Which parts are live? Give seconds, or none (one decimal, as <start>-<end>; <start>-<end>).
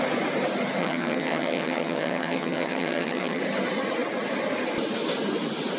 0.0-0.8; 3.4-5.8